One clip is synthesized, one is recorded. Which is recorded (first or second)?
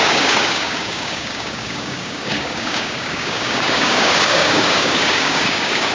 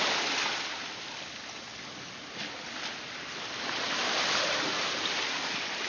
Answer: second